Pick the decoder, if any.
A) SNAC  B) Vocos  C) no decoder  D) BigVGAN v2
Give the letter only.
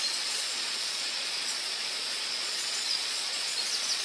B